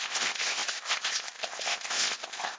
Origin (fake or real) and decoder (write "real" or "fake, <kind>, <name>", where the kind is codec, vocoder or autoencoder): fake, codec, ZipCodec